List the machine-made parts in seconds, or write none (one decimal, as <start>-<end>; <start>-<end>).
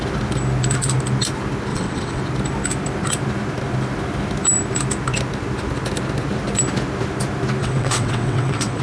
1.7-2.2; 7.6-8.8